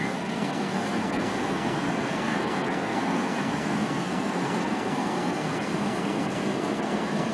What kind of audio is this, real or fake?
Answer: fake